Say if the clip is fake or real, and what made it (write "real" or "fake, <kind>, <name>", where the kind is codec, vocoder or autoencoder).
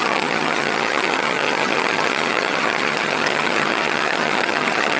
fake, vocoder, HiFi-GAN